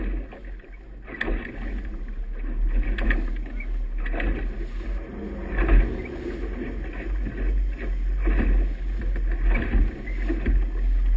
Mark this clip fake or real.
real